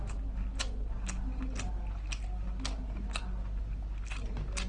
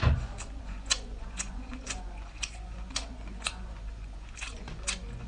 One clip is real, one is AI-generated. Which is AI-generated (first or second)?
second